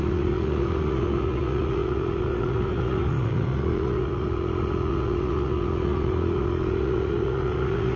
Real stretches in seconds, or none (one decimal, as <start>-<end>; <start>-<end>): none